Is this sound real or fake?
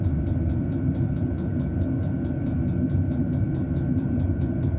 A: real